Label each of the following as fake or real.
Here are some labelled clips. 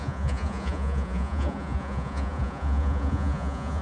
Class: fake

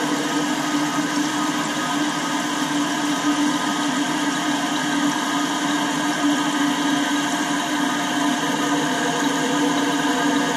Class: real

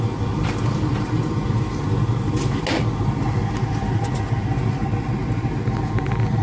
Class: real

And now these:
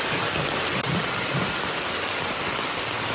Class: fake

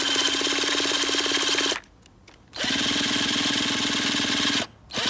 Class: real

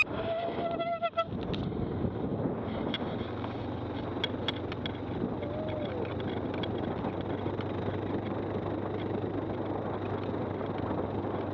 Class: real